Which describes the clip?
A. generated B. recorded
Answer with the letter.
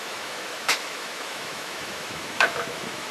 A